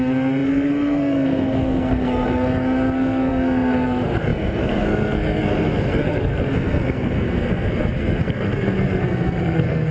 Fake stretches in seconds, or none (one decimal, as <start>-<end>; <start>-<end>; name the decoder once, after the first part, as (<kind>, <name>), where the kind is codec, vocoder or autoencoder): 0.0-9.9 (codec, SNAC)